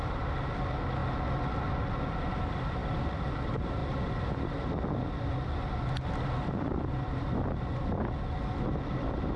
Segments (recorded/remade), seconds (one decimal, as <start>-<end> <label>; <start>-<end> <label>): 0.0-2.8 recorded; 2.8-3.3 remade; 3.3-9.4 recorded